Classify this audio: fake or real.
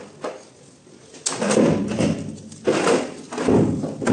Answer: real